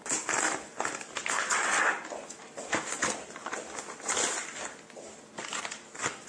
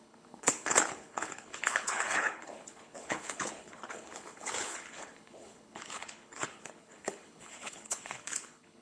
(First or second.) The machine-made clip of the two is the second